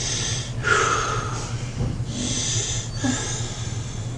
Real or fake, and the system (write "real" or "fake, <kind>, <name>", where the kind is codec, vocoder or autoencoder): real